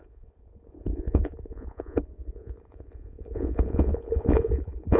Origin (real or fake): fake